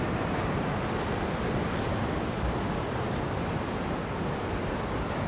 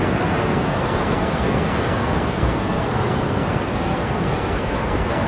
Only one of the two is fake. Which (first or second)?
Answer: second